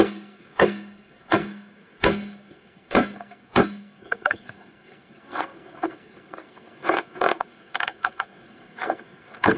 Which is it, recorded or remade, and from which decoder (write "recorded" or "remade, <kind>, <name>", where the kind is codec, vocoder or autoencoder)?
remade, codec, SNAC